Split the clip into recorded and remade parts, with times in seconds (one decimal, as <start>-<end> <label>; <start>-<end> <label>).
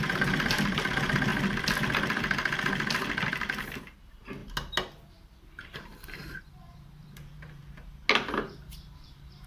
0.0-1.3 remade; 1.3-3.3 recorded; 3.3-4.4 remade; 4.4-5.1 recorded; 5.1-7.6 remade; 7.6-8.2 recorded; 8.2-9.5 remade